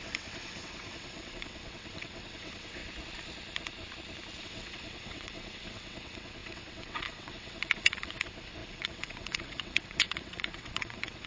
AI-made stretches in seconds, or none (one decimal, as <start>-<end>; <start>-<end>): 0.0-2.8; 4.4-11.3